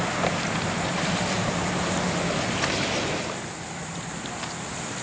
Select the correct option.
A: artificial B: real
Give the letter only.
B